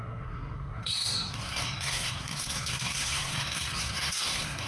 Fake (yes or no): yes